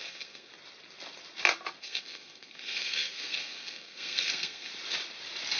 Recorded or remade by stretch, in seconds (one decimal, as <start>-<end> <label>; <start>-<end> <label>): 0.0-0.5 remade; 0.5-1.8 recorded; 1.8-4.7 remade; 4.7-5.6 recorded